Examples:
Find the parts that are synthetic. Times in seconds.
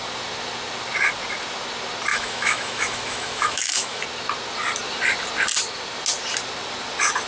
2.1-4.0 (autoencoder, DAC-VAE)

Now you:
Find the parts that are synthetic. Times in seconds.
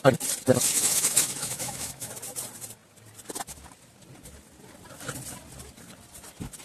0.6-2.1 (autoencoder, DAC-VAE)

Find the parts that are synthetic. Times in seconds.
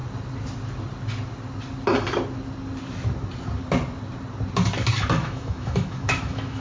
5.2-6.6 (autoencoder, DAC-VAE)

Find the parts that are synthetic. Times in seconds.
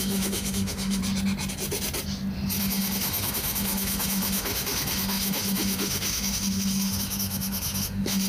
0.0-1.0 (autoencoder, DAC-VAE); 2.6-8.3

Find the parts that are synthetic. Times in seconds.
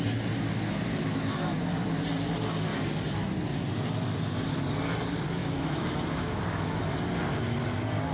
0.9-1.6 (autoencoder, DAC-VAE); 5.4-6.9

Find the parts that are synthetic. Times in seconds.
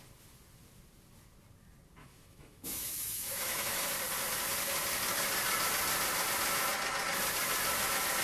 2.0-3.9 (autoencoder, DAC-VAE)